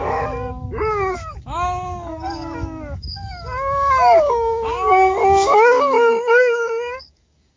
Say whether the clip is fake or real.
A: fake